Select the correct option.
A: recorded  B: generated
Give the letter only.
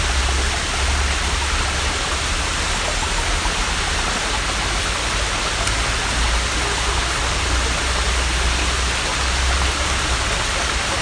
A